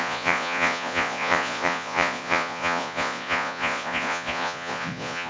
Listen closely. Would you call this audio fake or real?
fake